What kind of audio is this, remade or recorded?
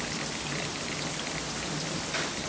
recorded